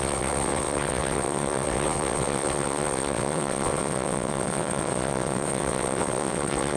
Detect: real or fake fake